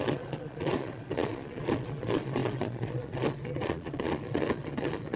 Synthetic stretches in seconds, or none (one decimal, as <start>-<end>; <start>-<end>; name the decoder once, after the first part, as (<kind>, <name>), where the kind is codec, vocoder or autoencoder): 0.0-5.2 (vocoder, Vocos)